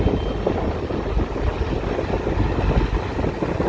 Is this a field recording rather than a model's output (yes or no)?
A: yes